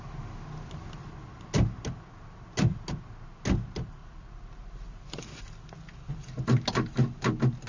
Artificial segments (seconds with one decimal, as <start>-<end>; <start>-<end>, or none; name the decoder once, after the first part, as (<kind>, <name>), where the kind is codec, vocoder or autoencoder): 4.0-4.5 (vocoder, BigVGAN v2)